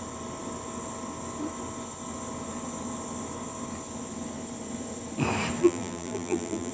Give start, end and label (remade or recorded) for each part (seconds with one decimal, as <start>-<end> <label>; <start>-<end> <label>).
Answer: 0.0-5.6 recorded; 5.6-6.7 remade